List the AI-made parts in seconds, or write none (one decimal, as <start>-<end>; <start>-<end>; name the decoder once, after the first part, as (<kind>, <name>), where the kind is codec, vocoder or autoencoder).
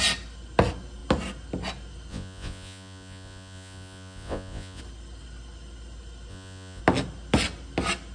2.1-4.8 (vocoder, Vocos); 6.3-6.8